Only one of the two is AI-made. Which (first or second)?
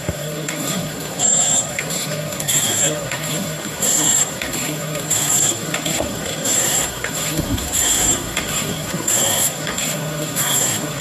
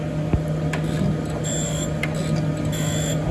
first